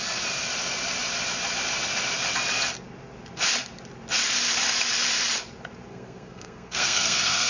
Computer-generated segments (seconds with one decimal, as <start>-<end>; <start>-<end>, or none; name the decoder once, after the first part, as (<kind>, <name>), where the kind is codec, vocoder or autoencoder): 5.9-7.5 (codec, SNAC)